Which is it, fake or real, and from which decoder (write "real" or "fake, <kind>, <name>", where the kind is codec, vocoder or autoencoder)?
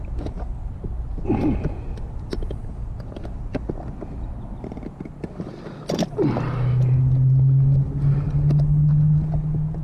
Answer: real